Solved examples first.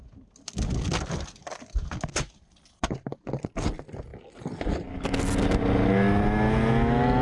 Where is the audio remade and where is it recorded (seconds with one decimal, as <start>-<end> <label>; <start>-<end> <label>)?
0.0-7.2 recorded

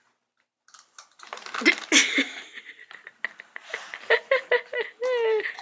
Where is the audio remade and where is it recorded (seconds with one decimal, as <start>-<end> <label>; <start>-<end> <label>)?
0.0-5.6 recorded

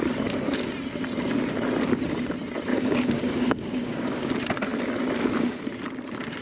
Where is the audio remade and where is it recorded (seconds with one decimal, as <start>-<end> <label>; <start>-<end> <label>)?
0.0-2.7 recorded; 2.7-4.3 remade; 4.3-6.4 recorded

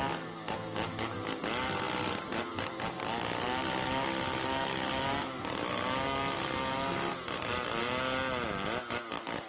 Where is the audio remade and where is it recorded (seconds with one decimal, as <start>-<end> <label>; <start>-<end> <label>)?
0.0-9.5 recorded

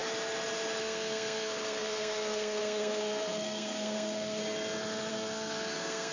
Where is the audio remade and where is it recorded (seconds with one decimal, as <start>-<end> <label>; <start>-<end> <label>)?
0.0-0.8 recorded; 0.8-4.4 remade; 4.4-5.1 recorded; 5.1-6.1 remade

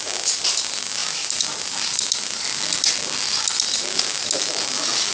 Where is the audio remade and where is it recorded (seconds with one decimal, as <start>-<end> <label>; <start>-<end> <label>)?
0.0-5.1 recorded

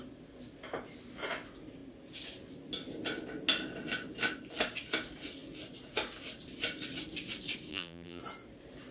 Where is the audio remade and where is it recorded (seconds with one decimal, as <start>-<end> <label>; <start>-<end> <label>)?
0.0-7.7 recorded; 7.7-8.2 remade; 8.2-8.9 recorded